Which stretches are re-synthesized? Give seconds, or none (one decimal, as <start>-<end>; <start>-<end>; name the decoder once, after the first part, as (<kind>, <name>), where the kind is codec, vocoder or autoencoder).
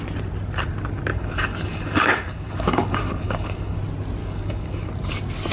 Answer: 1.1-3.8 (codec, DAC); 4.2-4.9